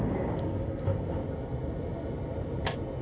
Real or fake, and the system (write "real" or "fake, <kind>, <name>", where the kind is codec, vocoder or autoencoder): real